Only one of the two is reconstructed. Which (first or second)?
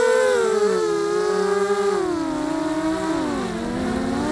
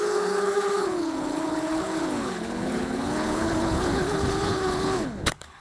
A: second